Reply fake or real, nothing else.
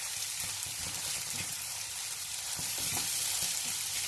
real